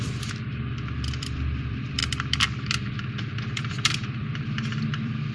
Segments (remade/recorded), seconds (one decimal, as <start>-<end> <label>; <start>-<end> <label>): 0.0-2.0 remade; 2.0-2.9 recorded; 2.9-5.3 remade